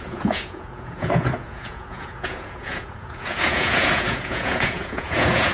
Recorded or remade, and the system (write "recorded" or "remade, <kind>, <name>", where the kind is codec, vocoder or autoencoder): remade, vocoder, Vocos